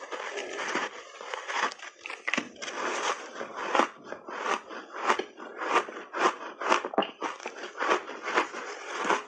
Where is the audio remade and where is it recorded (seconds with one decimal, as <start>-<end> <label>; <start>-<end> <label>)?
0.0-9.3 recorded